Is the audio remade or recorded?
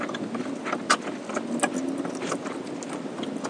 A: recorded